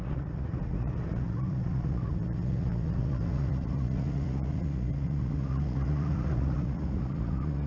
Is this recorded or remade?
remade